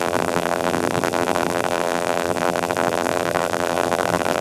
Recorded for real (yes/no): no